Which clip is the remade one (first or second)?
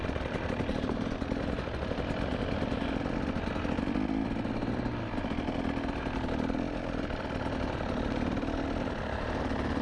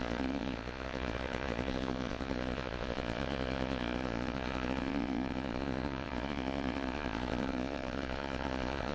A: second